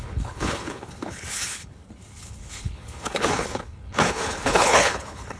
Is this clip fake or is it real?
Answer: fake